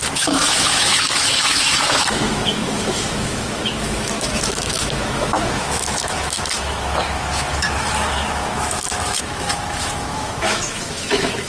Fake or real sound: fake